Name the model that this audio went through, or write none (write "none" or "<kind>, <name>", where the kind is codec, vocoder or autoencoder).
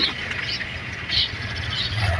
vocoder, Vocos